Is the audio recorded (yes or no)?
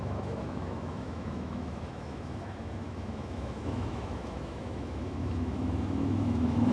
no